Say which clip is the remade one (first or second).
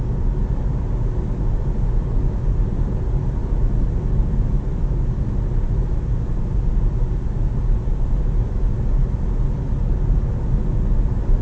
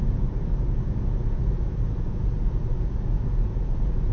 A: second